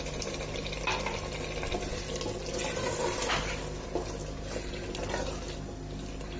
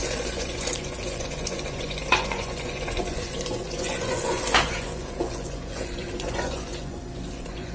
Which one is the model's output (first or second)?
second